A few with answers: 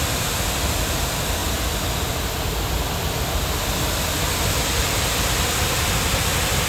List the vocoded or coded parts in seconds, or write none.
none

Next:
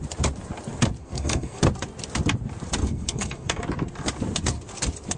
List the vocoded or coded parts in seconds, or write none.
1.0-1.6 (codec, SNAC); 2.8-3.6

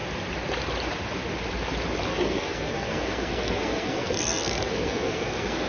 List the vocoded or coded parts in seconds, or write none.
2.1-5.7 (codec, SNAC)

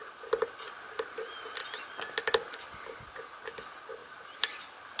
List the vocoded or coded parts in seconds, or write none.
none

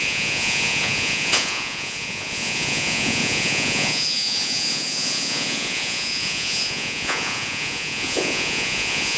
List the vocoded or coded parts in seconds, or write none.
0.0-9.2 (vocoder, Vocos)

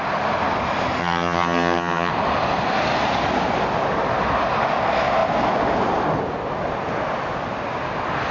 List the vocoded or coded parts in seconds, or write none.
1.0-2.1 (vocoder, HiFi-GAN)